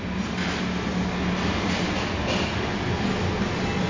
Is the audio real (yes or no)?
yes